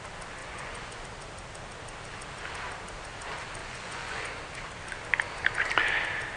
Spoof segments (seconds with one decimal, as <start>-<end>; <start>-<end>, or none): 0.4-1.0; 3.6-4.4